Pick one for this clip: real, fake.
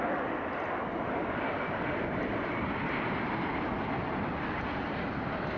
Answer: real